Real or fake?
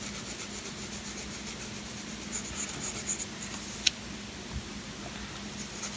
real